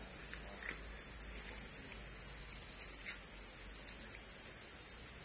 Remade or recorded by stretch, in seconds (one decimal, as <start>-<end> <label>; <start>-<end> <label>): 0.0-5.2 recorded